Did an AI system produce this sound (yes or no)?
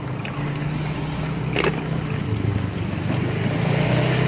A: no